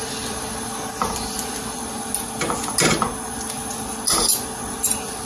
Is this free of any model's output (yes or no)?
yes